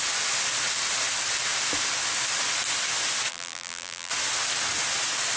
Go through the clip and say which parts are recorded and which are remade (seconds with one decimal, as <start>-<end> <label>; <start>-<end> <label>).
0.0-3.3 recorded; 3.3-4.1 remade; 4.1-5.4 recorded